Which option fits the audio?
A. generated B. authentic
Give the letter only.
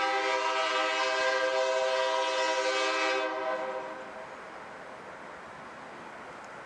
B